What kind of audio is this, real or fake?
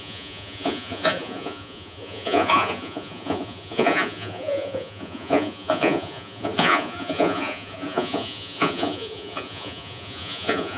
fake